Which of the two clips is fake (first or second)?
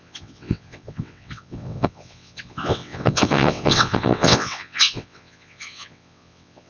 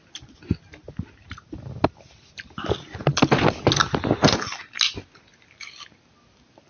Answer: first